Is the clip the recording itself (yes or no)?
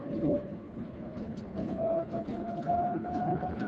no